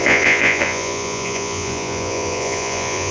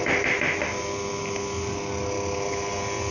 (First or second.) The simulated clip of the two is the first